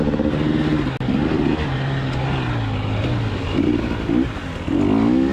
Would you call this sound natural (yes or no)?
yes